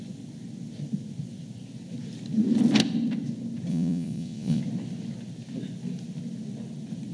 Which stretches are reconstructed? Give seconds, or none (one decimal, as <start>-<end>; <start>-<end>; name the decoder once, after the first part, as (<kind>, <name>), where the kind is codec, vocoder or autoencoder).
3.7-4.6 (vocoder, Vocos)